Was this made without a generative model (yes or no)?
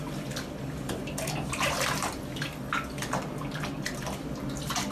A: yes